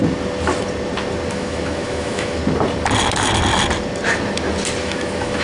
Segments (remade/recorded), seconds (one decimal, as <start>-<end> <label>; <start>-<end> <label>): 0.0-1.3 recorded; 1.3-2.4 remade; 2.4-4.8 recorded; 4.8-5.4 remade

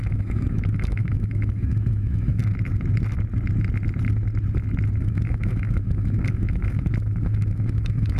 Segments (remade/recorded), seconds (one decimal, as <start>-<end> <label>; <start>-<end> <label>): 0.0-2.4 remade; 2.4-5.0 recorded; 5.0-8.2 remade